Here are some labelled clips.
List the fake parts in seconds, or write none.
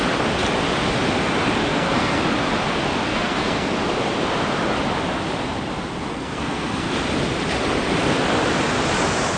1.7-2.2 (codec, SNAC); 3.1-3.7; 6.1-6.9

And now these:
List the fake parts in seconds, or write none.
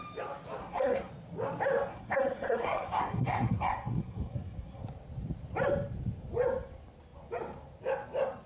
0.6-1.1 (codec, SNAC); 1.9-4.8